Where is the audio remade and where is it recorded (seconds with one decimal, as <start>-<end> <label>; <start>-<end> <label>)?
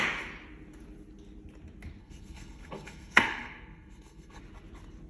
0.0-2.0 recorded; 2.0-4.4 remade; 4.4-5.1 recorded